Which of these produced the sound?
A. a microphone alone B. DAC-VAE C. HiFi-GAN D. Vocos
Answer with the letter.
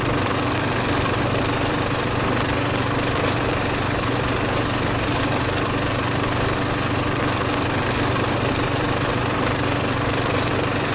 A